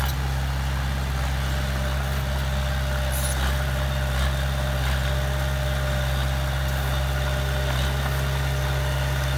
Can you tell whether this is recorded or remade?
recorded